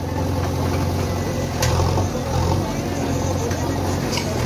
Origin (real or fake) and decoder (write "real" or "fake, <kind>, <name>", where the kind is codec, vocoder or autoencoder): real